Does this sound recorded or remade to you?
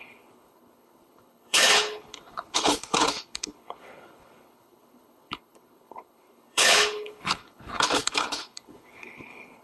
remade